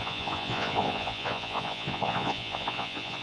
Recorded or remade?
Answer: remade